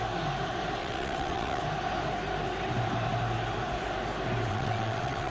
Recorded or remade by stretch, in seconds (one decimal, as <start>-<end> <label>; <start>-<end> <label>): 0.0-0.8 recorded; 0.8-1.6 remade; 1.6-4.5 recorded; 4.5-5.3 remade